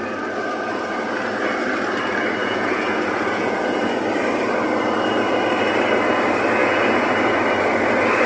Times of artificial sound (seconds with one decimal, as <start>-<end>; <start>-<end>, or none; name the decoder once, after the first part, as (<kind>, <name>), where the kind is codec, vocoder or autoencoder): 2.4-4.0 (vocoder, Vocos); 6.6-7.1